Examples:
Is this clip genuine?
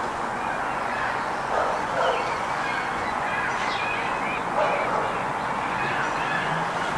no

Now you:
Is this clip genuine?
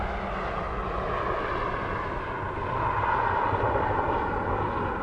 yes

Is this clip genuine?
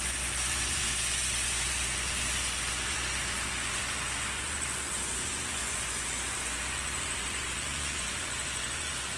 no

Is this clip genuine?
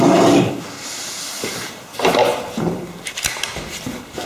yes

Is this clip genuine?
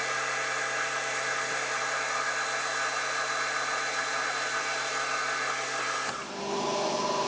yes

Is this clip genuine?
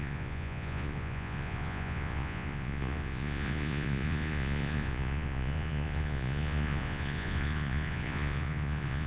no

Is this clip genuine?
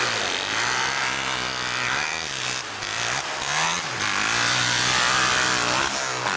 yes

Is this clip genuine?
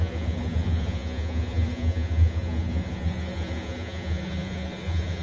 no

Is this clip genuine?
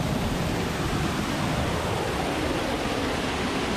yes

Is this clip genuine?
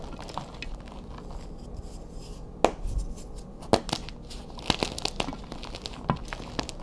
yes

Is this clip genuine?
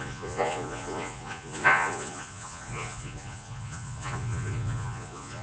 no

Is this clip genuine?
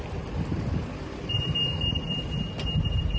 yes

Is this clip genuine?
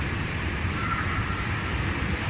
yes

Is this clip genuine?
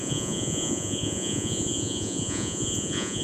no